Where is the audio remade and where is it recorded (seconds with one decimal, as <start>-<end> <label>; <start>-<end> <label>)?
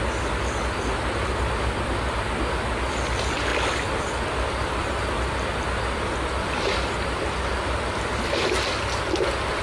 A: 0.0-9.6 recorded